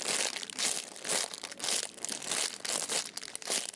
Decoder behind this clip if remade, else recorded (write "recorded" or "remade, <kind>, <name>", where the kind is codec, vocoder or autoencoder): recorded